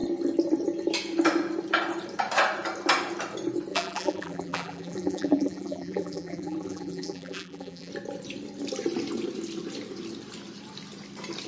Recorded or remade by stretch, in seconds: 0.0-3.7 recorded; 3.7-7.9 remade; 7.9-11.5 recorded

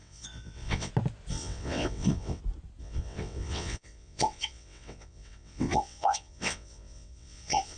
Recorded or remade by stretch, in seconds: 0.0-0.9 remade; 0.9-1.3 recorded; 1.3-2.4 remade; 2.4-2.8 recorded; 2.8-7.8 remade

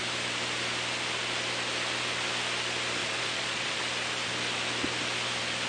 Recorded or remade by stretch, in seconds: 0.0-3.0 recorded; 3.0-3.8 remade; 3.8-5.7 recorded

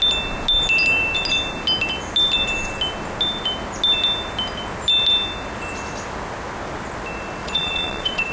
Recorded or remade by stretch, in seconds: 0.0-7.4 recorded; 7.4-8.3 remade

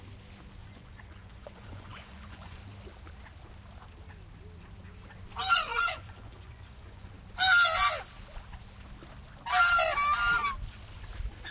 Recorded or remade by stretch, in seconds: 0.0-0.6 recorded; 0.6-2.6 remade; 2.6-5.7 recorded; 5.7-7.1 remade; 7.1-11.5 recorded